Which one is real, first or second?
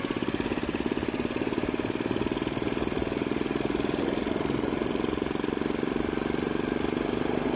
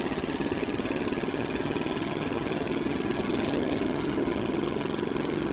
first